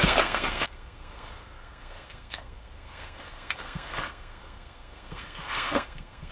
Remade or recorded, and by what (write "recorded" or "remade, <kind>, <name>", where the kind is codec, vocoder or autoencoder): remade, codec, SNAC